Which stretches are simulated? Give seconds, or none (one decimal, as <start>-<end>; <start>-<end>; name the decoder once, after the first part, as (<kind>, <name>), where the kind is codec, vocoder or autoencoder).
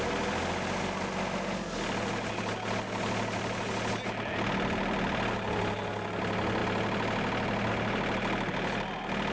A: none